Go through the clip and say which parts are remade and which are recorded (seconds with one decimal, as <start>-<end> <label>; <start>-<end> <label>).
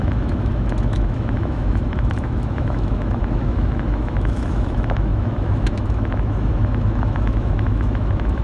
0.0-8.4 remade